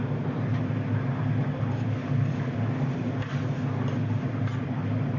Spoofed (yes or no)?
no